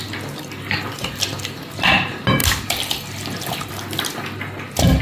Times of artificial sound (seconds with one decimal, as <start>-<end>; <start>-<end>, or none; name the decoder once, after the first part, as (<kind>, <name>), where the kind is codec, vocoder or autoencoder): none